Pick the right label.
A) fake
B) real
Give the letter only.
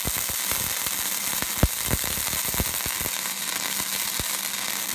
B